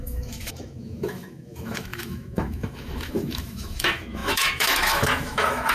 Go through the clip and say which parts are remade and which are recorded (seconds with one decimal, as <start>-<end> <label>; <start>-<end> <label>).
0.0-5.7 remade